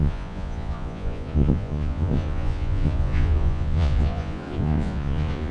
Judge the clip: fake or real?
fake